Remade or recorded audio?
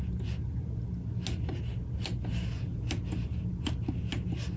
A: recorded